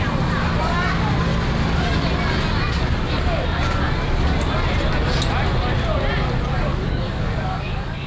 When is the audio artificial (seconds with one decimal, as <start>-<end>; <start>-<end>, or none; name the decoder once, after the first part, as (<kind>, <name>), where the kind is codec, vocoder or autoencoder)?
6.7-8.1 (codec, DAC)